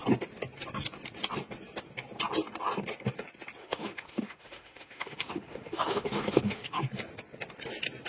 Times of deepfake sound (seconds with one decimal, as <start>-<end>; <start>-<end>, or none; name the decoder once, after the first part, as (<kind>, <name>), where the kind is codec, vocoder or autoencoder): 3.6-6.8 (autoencoder, DAC-VAE)